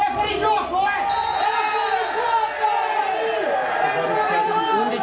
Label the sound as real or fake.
real